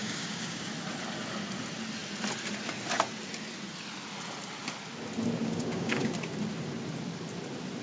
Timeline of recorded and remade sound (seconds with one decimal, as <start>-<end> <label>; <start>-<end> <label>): 0.0-0.7 remade; 0.7-5.4 recorded; 5.4-6.1 remade; 6.1-7.8 recorded